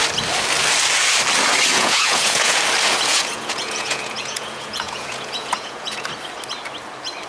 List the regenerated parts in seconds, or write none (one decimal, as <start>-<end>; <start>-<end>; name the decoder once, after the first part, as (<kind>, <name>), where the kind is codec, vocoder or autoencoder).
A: 1.7-2.6 (vocoder, Vocos); 3.1-6.1